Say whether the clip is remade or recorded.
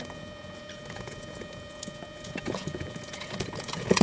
remade